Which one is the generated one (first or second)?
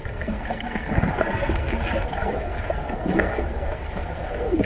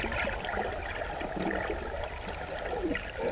first